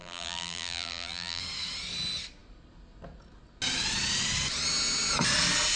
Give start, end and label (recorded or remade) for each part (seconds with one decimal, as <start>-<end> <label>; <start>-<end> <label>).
0.0-1.4 remade; 1.4-5.8 recorded